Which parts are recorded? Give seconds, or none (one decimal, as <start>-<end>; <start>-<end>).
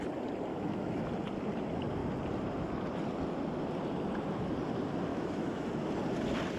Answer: 0.0-0.5; 1.1-5.1; 5.7-6.6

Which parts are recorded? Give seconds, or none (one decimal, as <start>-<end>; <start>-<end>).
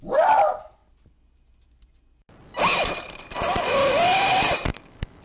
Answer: 0.0-4.7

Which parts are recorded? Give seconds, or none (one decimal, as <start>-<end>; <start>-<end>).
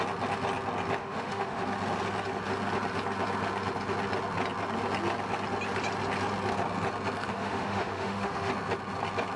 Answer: 0.0-1.0; 1.6-7.3; 8.5-9.4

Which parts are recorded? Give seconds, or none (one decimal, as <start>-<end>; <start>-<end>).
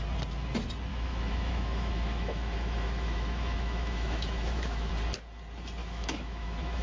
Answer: 0.0-0.9; 4.9-5.8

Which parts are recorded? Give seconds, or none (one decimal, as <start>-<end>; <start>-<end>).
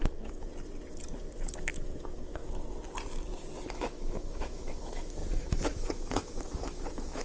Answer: 0.5-1.5; 2.4-3.7